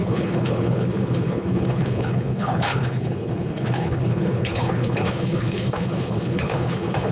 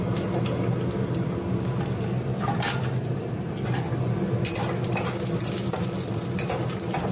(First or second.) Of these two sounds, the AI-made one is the first